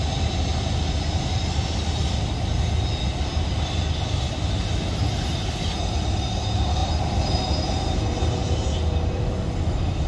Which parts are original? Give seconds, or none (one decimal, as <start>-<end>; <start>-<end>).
0.0-10.1